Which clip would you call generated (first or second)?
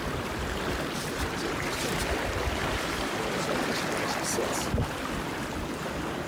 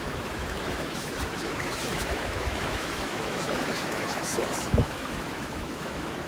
second